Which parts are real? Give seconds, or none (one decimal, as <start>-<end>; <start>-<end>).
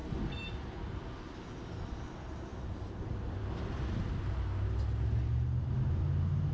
0.0-6.5